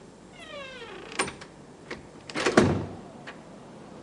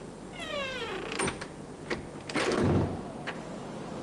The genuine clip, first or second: second